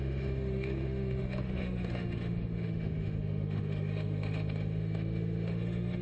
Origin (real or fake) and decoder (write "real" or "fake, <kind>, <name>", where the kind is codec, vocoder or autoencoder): fake, autoencoder, DAC-VAE